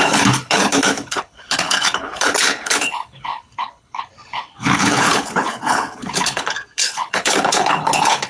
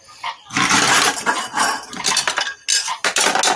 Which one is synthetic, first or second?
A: first